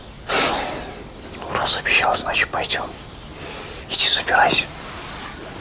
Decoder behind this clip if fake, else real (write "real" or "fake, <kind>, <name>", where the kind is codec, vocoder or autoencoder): real